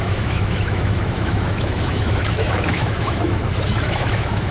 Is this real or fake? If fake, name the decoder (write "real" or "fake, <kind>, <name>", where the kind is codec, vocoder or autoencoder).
fake, autoencoder, DAC-VAE